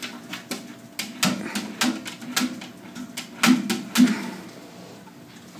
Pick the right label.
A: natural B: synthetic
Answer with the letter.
A